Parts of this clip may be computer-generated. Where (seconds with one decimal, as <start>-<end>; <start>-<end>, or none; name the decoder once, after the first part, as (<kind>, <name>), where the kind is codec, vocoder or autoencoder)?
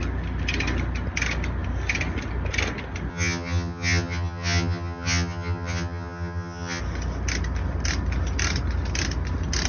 3.1-6.8 (vocoder, HiFi-GAN)